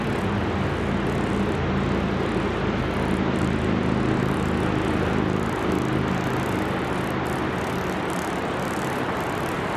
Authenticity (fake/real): real